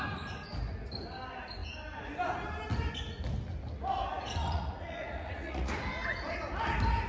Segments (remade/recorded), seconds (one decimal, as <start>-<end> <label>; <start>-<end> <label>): 0.0-4.4 recorded; 4.4-5.7 remade; 5.7-7.1 recorded